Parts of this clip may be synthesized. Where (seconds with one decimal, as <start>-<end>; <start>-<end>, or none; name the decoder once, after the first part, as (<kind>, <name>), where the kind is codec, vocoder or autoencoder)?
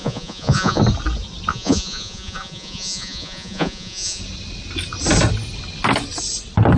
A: 0.0-0.8 (vocoder, Vocos); 1.5-4.2